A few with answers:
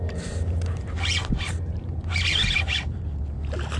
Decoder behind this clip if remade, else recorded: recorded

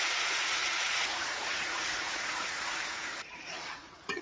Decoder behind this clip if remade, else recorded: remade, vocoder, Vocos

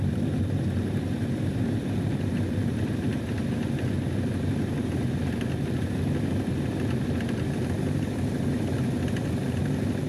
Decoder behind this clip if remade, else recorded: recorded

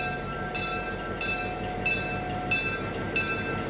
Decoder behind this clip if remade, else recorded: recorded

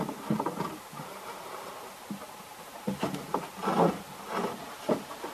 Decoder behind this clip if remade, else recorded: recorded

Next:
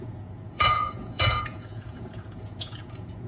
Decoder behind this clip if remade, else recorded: remade, vocoder, Vocos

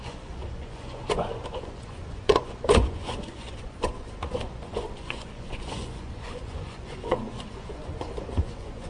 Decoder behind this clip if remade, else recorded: remade, vocoder, Vocos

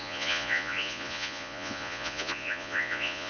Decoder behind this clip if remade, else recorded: remade, vocoder, Vocos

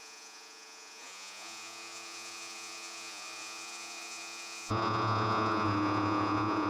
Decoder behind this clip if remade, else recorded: remade, vocoder, Vocos